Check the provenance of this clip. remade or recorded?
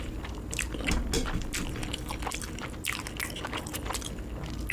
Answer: recorded